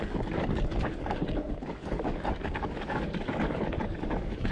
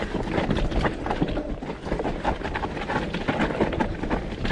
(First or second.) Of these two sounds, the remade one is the first